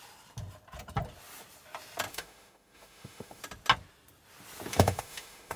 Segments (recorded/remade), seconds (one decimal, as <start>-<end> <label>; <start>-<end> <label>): 0.0-2.1 recorded; 2.1-3.4 remade; 3.4-4.7 recorded; 4.7-5.6 remade